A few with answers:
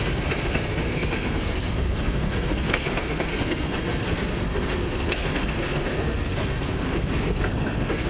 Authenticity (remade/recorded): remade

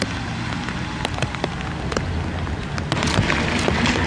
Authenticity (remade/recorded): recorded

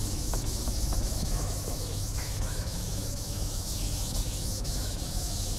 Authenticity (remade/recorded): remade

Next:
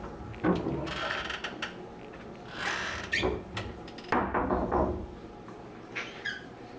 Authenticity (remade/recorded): remade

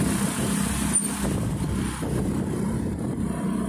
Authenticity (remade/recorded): recorded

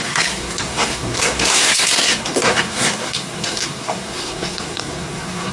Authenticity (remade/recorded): remade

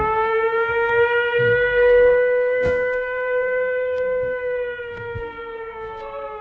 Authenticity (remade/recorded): remade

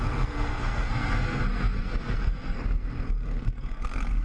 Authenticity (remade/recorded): remade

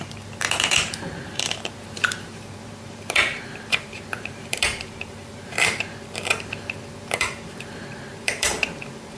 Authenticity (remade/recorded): remade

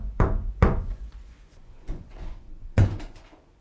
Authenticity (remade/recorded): remade